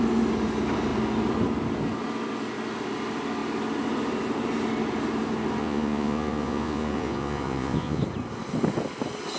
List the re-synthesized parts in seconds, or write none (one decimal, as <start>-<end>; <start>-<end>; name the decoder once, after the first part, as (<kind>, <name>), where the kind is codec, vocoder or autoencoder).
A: 5.6-8.0 (vocoder, Vocos)